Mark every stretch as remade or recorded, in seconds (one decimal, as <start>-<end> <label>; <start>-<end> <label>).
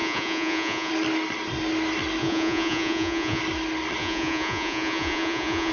0.0-0.9 remade; 0.9-2.2 recorded; 2.2-3.4 remade; 3.4-4.0 recorded; 4.0-5.7 remade